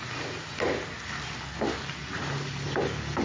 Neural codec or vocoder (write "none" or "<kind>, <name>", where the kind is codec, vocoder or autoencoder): none